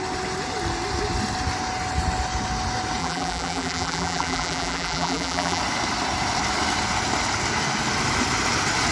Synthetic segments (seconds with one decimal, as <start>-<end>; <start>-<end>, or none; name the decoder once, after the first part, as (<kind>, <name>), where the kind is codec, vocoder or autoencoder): 3.0-5.6 (vocoder, BigVGAN v2)